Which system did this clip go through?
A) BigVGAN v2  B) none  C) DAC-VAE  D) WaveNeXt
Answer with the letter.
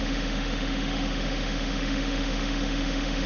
C